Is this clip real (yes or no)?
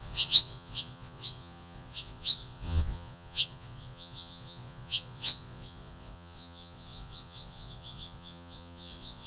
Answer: no